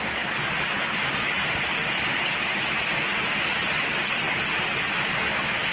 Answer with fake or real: real